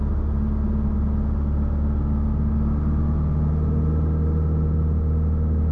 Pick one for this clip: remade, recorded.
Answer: recorded